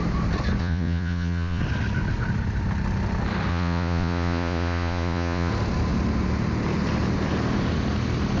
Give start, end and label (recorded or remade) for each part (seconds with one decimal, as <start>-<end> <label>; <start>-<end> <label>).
0.0-0.6 recorded; 0.6-1.6 remade; 1.6-3.5 recorded; 3.5-5.5 remade; 5.5-8.4 recorded

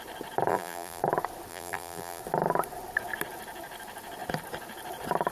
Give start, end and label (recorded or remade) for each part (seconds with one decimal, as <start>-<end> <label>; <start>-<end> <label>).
0.0-0.5 recorded; 0.5-1.0 remade; 1.0-1.5 recorded; 1.5-2.2 remade; 2.2-5.3 recorded

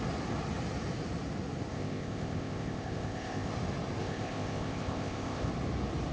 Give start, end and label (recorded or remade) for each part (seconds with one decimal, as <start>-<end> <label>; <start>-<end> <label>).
0.0-1.7 recorded; 1.7-3.5 remade; 3.5-4.0 recorded; 4.0-5.5 remade; 5.5-6.1 recorded

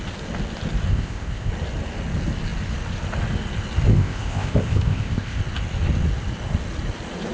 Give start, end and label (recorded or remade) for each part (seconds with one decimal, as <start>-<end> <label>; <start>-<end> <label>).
0.0-0.9 recorded; 0.9-1.5 remade; 1.5-3.9 recorded; 3.9-5.4 remade; 5.4-7.3 recorded

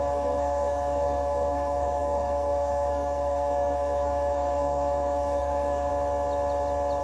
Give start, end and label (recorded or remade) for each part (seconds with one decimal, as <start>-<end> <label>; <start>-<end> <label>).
0.0-5.9 remade; 5.9-7.0 recorded

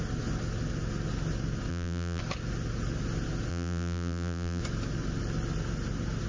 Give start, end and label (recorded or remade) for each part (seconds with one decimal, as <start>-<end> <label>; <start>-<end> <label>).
0.0-1.7 recorded; 1.7-2.2 remade; 2.2-3.5 recorded; 3.5-4.6 remade; 4.6-6.3 recorded

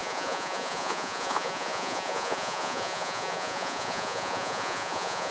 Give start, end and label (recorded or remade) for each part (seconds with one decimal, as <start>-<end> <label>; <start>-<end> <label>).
0.0-5.3 remade